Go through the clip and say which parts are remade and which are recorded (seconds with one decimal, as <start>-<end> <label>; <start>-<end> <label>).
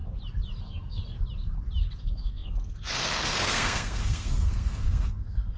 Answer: 0.0-0.6 recorded; 0.6-1.0 remade; 1.0-2.0 recorded; 2.0-5.6 remade